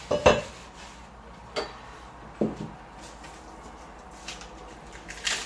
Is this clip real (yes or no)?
no